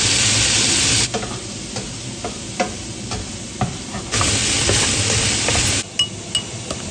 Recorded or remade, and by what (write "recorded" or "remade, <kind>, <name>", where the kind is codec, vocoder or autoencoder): recorded